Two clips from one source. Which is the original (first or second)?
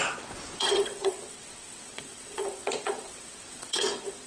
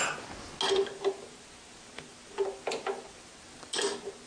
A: second